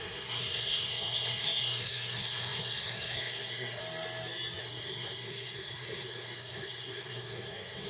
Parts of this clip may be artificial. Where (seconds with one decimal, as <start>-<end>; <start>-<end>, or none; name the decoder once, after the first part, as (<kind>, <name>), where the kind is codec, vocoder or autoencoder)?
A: 0.0-3.8 (codec, SNAC); 4.6-7.9